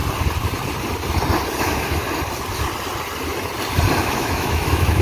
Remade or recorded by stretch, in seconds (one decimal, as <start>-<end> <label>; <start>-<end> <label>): 0.0-1.6 recorded; 1.6-2.0 remade; 2.0-4.0 recorded; 4.0-5.0 remade